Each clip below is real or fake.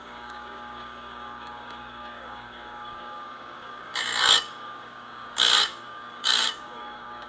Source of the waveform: fake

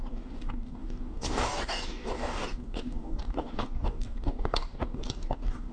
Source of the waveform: fake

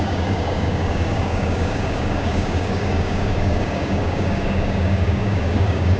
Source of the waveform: fake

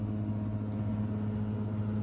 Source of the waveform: real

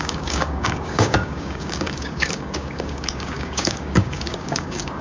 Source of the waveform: fake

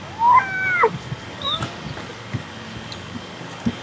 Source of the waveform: fake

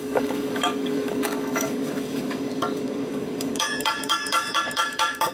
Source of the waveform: fake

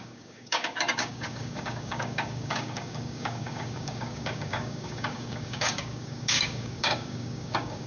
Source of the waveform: fake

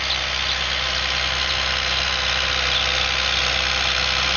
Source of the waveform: real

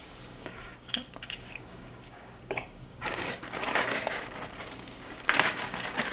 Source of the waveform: fake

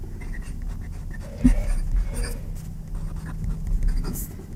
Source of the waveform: real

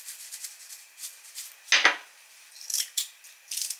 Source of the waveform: real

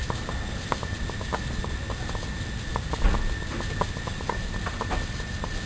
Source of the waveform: real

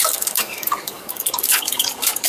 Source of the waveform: fake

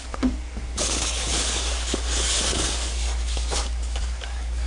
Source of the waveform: fake